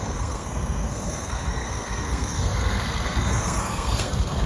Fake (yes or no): yes